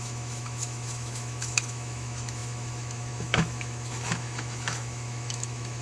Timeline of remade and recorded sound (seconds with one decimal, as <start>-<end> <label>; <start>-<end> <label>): 0.0-5.8 remade